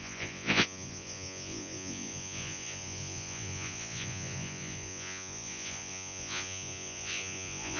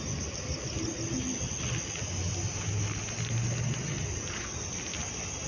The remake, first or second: first